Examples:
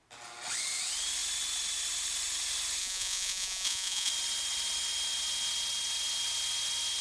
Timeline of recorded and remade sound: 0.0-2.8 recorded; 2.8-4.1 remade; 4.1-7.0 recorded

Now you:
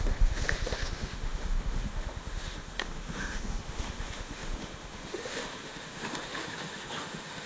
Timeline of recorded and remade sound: 0.0-7.5 remade

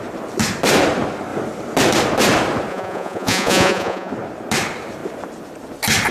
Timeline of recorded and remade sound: 0.0-2.7 recorded; 2.7-4.1 remade; 4.1-6.1 recorded

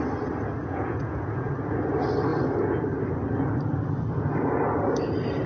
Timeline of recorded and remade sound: 0.0-0.6 recorded; 0.6-1.5 remade; 1.5-5.5 recorded

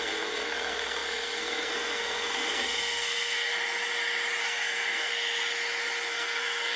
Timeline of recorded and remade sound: 0.0-3.5 remade; 3.5-4.4 recorded; 4.4-5.1 remade; 5.1-6.1 recorded; 6.1-6.8 remade

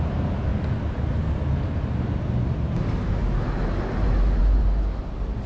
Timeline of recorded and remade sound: 0.0-0.5 remade; 0.5-3.8 recorded; 3.8-4.4 remade; 4.4-5.0 recorded; 5.0-5.5 remade